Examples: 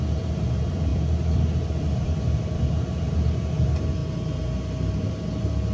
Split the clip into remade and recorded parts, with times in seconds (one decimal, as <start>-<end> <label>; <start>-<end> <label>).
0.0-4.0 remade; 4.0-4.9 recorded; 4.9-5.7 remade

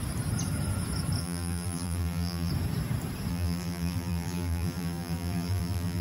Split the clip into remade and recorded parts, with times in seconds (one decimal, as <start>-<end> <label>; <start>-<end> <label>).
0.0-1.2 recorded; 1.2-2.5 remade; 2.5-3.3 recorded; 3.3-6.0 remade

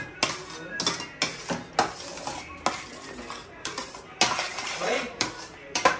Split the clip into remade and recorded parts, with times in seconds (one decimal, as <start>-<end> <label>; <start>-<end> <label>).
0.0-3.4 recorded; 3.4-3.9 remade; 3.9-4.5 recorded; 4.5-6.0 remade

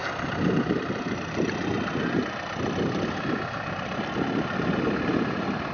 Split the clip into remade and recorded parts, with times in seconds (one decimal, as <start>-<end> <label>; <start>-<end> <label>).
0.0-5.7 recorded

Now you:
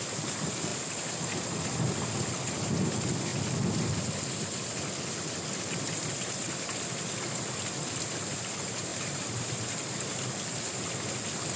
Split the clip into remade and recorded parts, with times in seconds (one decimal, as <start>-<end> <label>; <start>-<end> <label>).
0.0-8.9 recorded; 8.9-9.5 remade; 9.5-11.6 recorded